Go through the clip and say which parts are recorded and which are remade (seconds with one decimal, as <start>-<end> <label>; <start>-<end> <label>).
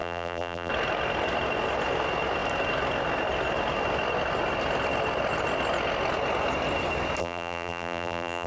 0.0-0.7 remade; 0.7-7.2 recorded; 7.2-8.5 remade